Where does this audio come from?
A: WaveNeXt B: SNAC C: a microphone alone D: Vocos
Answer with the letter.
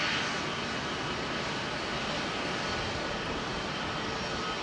C